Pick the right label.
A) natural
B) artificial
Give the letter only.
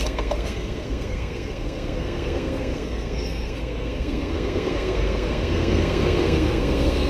B